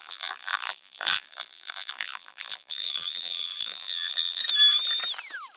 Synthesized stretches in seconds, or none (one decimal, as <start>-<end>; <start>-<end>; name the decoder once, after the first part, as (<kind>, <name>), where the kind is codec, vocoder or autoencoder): 0.0-4.4 (vocoder, BigVGAN v2)

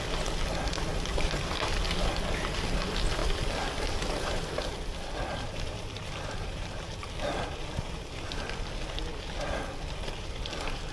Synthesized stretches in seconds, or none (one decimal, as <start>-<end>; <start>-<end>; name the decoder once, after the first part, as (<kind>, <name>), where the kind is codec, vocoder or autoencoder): 5.3-8.4 (vocoder, BigVGAN v2)

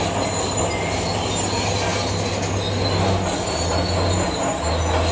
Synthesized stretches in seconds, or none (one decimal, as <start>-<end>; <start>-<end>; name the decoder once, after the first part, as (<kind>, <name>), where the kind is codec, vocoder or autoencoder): none

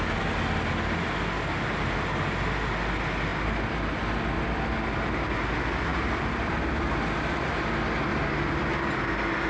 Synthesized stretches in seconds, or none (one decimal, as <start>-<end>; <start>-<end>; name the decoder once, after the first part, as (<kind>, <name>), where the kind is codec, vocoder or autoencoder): 5.9-6.8 (vocoder, BigVGAN v2); 8.1-8.6